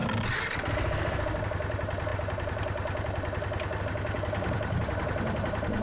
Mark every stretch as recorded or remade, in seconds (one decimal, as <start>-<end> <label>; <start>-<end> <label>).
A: 0.0-0.7 remade; 0.7-5.8 recorded